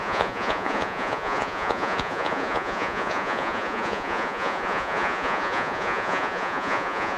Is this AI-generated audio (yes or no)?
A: yes